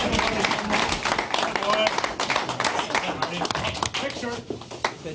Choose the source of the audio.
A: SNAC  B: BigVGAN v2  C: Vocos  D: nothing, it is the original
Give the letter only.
D